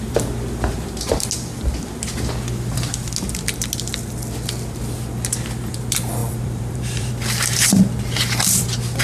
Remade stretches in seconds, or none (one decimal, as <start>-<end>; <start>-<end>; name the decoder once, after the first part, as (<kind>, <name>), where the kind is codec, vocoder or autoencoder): 6.2-7.1 (vocoder, BigVGAN v2)